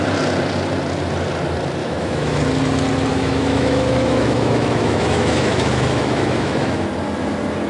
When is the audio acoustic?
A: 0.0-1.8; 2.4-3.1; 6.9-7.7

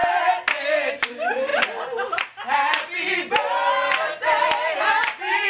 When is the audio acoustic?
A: 0.0-5.5

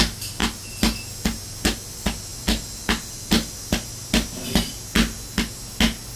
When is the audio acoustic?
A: 0.0-6.2

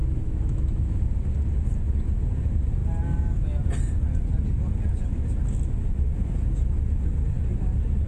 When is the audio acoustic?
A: 1.0-8.1

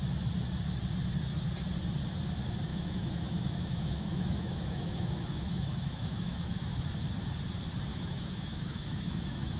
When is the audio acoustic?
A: 0.0-2.7; 6.8-7.9

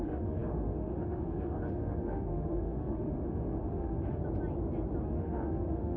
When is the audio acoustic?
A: 4.2-5.0

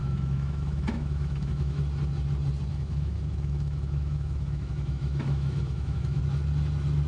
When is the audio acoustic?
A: 1.8-2.7; 6.2-7.1

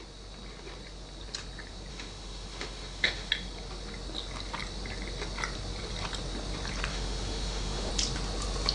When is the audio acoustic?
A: 0.0-1.9; 3.3-6.9; 7.9-8.7